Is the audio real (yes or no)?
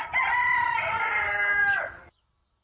yes